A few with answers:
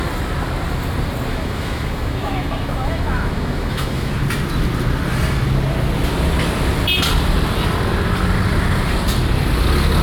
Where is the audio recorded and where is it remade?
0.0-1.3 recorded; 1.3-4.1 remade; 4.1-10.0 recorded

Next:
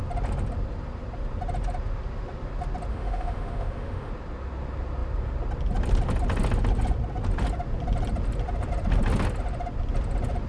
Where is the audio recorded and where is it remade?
0.0-2.9 recorded; 2.9-4.1 remade; 4.1-10.5 recorded

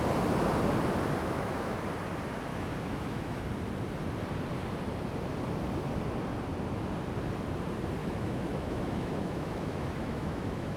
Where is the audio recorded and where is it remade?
0.0-1.2 recorded; 1.2-1.8 remade; 1.8-2.5 recorded; 2.5-3.4 remade; 3.4-8.0 recorded; 8.0-10.8 remade

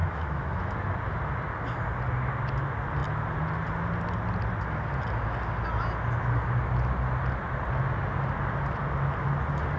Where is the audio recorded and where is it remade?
0.0-0.7 remade; 0.7-9.8 recorded

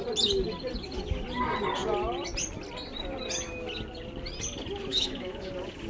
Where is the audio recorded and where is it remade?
0.0-4.9 recorded; 4.9-5.5 remade; 5.5-5.9 recorded

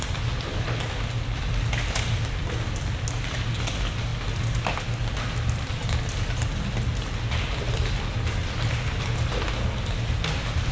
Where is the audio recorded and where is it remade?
0.0-10.7 recorded

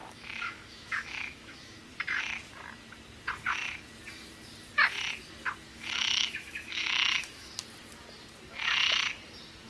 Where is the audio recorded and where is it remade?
0.0-1.8 remade; 1.8-5.7 recorded; 5.7-7.5 remade; 7.5-9.7 recorded

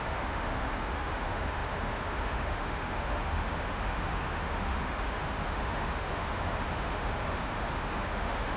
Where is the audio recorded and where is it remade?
0.0-8.6 remade